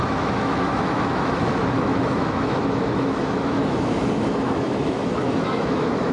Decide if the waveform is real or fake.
fake